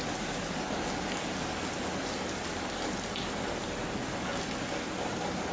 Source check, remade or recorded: recorded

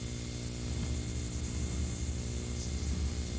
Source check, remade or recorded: recorded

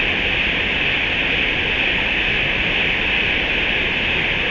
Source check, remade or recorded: recorded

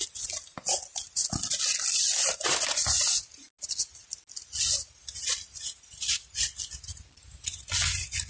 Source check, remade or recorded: recorded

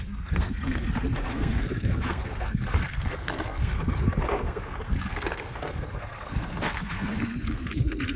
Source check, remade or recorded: remade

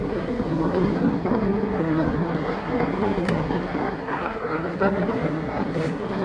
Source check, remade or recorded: remade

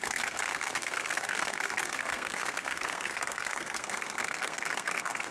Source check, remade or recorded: remade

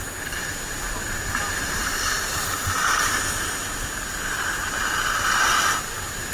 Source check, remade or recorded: recorded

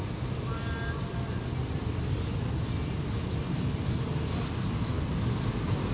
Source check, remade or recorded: recorded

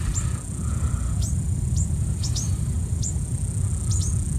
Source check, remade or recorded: recorded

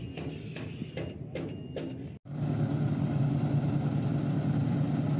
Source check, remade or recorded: recorded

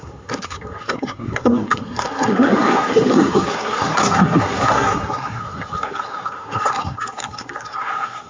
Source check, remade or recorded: remade